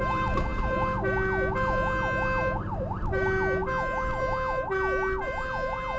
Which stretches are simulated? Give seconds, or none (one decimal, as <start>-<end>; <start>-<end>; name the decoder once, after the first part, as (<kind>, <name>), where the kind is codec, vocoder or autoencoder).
none